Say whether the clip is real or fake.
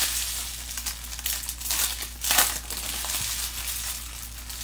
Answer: real